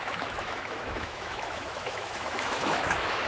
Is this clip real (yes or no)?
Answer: no